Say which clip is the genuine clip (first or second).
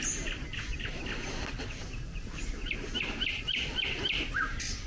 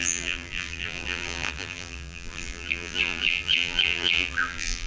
first